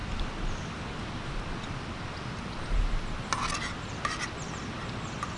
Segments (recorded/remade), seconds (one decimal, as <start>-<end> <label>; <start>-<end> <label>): 0.0-5.4 recorded